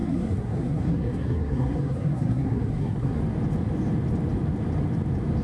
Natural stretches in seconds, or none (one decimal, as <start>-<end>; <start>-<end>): 3.2-5.4